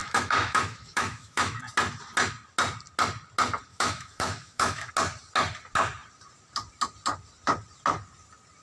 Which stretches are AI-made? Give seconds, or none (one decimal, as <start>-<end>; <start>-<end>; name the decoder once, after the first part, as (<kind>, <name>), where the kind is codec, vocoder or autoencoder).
0.0-1.6 (autoencoder, DAC-VAE); 3.7-4.9